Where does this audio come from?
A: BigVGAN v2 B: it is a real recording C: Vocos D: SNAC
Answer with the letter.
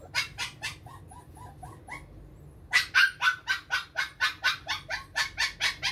B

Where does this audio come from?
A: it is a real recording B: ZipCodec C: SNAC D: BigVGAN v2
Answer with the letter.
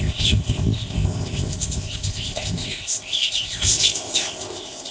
B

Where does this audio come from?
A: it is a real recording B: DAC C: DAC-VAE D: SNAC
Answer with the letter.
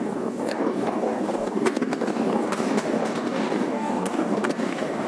B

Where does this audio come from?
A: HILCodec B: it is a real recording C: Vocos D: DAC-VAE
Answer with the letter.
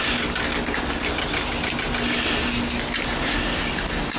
B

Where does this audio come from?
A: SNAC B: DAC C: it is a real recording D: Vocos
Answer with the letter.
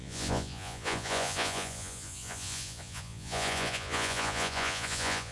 D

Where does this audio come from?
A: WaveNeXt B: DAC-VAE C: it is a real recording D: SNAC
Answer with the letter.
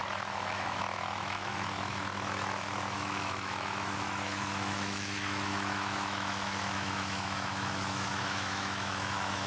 B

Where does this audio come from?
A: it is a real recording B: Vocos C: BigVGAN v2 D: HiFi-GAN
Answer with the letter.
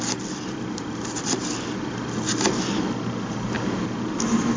A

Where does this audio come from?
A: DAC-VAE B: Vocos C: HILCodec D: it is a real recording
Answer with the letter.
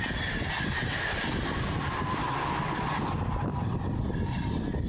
D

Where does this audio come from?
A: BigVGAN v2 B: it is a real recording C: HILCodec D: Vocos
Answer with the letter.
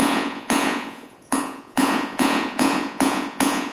D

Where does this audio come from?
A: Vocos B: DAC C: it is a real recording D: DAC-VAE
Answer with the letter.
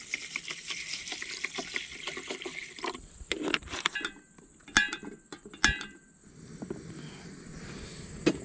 C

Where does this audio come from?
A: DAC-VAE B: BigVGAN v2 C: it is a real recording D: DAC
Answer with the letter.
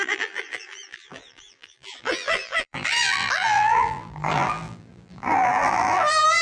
B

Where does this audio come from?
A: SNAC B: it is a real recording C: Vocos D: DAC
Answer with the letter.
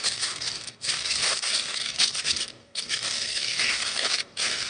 D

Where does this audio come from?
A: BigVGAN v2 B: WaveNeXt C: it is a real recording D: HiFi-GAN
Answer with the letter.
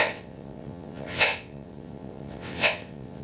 B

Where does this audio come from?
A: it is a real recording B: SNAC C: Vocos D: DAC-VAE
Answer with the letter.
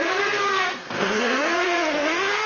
B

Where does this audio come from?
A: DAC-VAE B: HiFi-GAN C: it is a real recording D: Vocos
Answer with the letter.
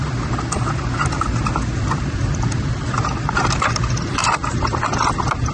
C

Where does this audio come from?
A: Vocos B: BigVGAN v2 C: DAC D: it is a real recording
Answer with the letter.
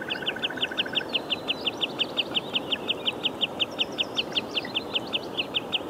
D